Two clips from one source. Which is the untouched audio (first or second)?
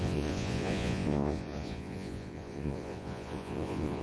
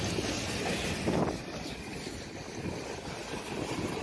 second